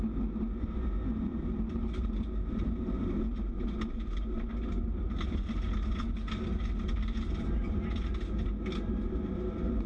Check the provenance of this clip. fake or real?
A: real